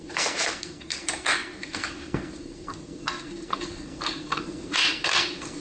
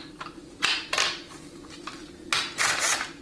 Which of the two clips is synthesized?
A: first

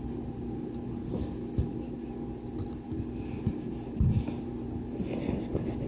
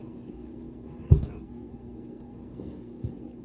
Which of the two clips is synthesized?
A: second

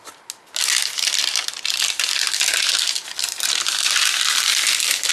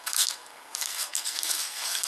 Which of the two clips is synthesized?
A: second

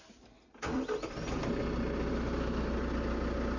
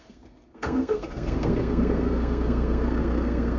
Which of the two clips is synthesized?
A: second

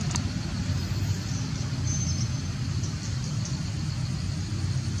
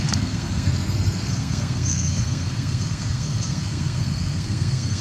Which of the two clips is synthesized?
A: second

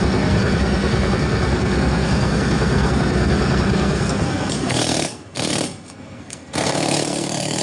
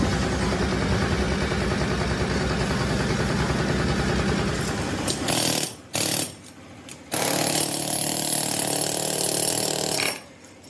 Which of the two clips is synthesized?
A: first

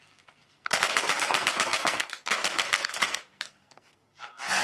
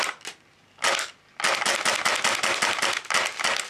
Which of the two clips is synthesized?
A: first